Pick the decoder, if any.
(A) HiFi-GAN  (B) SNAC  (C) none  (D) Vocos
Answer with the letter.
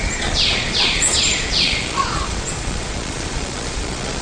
D